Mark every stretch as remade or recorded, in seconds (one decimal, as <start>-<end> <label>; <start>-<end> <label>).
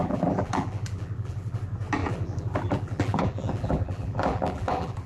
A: 0.0-1.6 remade; 1.6-2.0 recorded; 2.0-5.1 remade